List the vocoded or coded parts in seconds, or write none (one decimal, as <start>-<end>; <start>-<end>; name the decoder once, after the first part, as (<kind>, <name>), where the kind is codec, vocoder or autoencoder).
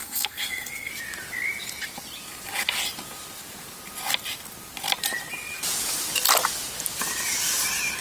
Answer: 0.0-0.9 (codec, SNAC)